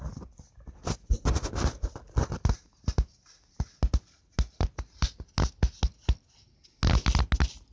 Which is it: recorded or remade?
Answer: recorded